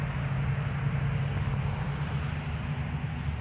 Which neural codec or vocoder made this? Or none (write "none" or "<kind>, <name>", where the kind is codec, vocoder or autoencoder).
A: none